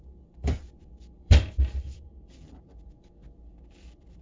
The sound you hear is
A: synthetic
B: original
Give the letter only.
A